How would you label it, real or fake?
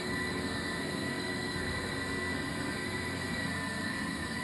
fake